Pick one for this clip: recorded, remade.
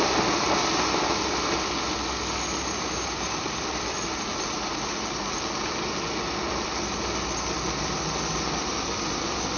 recorded